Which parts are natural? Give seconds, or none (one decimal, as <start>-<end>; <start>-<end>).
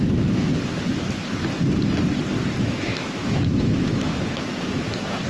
0.5-2.6